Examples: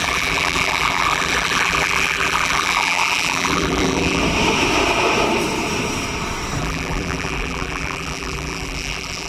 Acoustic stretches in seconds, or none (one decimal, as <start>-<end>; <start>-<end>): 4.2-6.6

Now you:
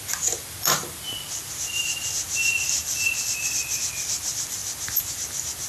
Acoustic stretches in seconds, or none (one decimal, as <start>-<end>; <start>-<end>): 0.0-2.8; 3.8-5.7

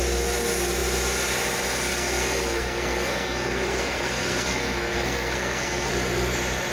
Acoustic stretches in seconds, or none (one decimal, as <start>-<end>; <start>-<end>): 0.0-1.9; 5.9-6.7

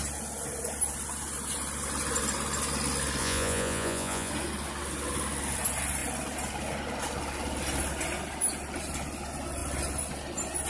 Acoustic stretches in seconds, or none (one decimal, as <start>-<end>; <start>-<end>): 0.0-3.2; 4.3-10.7